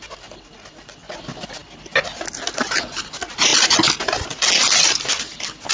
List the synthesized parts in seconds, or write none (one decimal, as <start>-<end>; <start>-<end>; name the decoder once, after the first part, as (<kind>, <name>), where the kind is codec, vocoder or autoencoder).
none